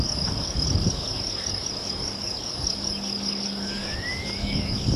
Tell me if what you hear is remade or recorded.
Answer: remade